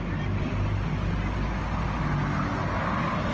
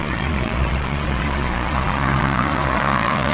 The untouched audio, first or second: first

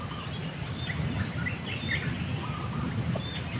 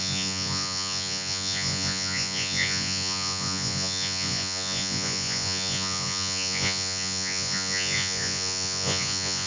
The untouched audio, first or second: first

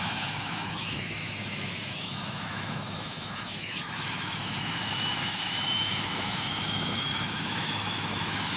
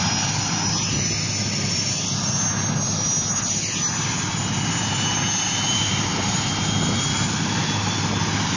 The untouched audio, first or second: second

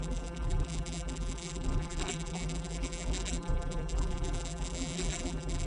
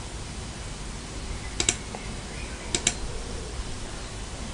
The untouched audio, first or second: second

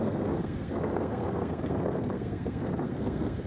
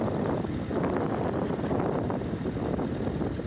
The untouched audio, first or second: second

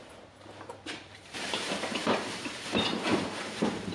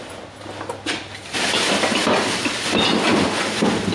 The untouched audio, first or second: second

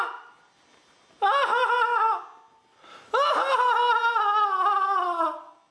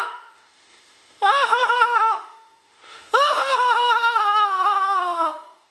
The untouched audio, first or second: first